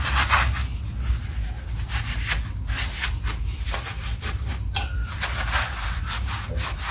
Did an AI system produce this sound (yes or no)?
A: no